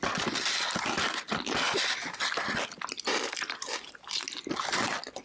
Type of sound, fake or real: real